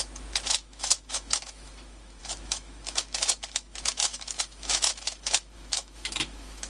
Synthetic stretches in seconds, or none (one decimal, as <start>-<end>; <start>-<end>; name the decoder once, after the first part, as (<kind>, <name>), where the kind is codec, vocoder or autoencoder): 0.0-6.7 (autoencoder, DAC-VAE)